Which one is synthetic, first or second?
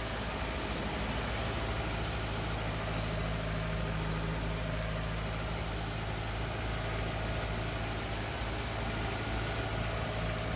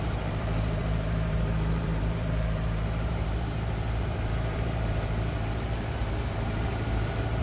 second